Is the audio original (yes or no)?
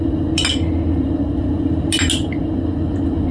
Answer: yes